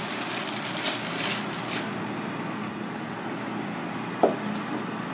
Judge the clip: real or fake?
real